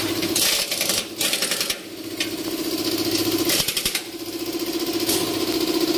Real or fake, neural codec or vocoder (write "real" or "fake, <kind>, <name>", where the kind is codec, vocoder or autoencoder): real